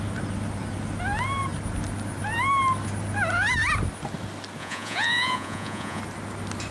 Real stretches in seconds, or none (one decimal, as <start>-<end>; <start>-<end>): 0.0-4.6; 6.0-6.7